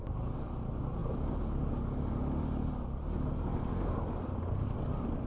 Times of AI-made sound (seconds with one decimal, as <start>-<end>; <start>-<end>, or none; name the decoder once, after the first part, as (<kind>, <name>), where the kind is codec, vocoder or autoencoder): none

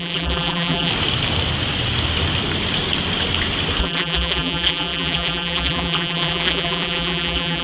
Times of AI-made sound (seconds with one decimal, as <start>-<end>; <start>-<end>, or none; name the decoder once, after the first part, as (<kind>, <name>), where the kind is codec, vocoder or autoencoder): 0.0-0.9 (vocoder, BigVGAN v2); 3.8-7.6

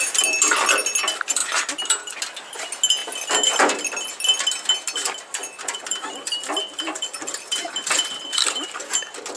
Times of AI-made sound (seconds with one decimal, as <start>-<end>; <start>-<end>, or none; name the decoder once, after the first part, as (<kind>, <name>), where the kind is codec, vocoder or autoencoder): 5.4-8.8 (vocoder, BigVGAN v2)

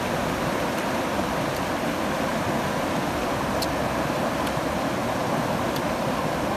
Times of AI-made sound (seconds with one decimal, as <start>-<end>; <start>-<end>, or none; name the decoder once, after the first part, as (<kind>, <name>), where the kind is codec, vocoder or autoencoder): none

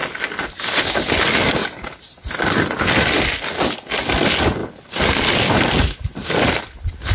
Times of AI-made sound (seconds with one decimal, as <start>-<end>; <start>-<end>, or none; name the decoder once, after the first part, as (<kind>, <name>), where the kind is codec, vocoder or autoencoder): none